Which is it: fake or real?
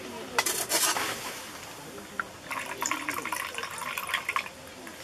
real